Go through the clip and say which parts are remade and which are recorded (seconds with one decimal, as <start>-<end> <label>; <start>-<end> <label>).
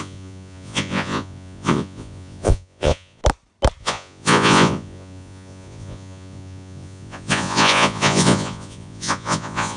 0.0-3.2 remade; 3.2-3.8 recorded; 3.8-9.8 remade